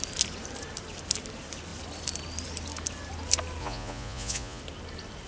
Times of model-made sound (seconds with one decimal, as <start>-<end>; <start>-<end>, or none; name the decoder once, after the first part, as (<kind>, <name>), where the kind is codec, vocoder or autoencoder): 3.6-4.6 (vocoder, Vocos)

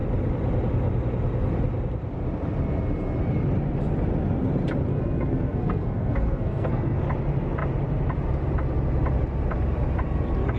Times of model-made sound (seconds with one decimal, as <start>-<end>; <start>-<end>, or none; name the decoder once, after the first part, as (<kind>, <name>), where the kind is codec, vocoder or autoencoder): 4.9-7.0 (codec, SNAC)